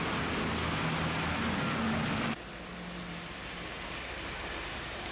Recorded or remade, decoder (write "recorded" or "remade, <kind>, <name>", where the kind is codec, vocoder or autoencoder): recorded